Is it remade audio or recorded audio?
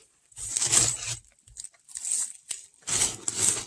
recorded